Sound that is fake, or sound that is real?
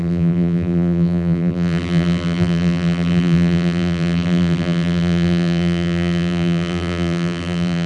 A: fake